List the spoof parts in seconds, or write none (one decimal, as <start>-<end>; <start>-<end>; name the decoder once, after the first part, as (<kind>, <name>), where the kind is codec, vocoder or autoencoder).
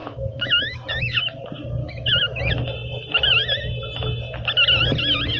0.0-1.2 (autoencoder, DAC-VAE); 1.8-2.4